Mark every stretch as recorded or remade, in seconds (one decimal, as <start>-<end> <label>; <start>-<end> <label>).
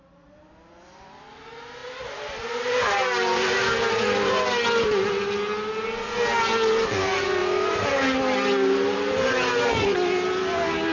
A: 0.0-10.9 recorded